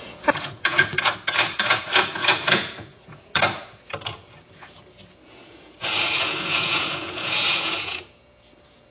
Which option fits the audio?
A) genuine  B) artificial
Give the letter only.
B